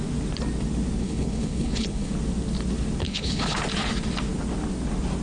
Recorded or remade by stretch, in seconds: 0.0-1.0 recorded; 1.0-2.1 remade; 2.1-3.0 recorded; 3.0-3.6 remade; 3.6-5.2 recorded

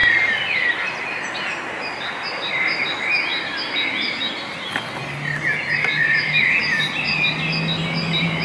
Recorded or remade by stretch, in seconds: 0.0-8.4 recorded

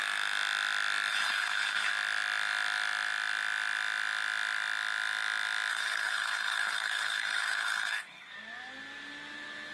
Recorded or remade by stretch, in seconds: 0.0-1.1 recorded; 1.1-1.9 remade; 1.9-5.7 recorded; 5.7-8.3 remade; 8.3-9.7 recorded

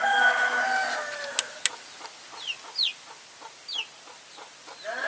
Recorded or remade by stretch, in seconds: 0.0-5.1 recorded

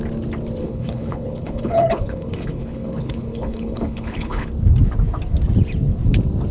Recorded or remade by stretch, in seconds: 0.0-0.6 recorded; 0.6-4.5 remade; 4.5-6.5 recorded

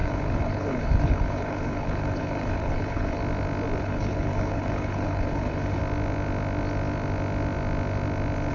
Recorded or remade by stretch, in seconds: 0.0-3.2 remade; 3.2-3.8 recorded; 3.8-5.8 remade; 5.8-8.5 recorded

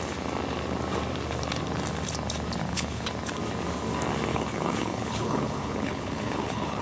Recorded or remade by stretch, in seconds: 0.0-2.6 recorded; 2.6-3.1 remade; 3.1-4.3 recorded; 4.3-6.8 remade

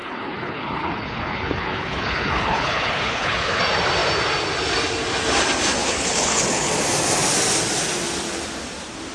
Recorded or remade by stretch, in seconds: 0.0-3.6 remade; 3.6-5.8 recorded; 5.8-6.7 remade; 6.7-9.1 recorded